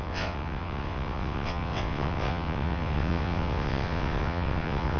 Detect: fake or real fake